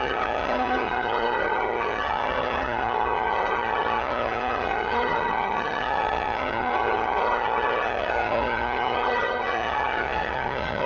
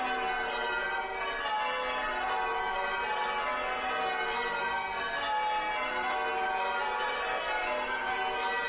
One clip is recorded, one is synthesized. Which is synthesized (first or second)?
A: first